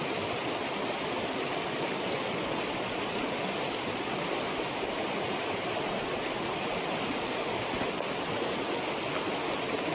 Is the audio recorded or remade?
recorded